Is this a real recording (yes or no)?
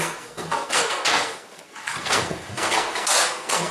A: no